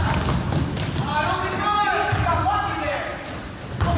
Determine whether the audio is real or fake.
real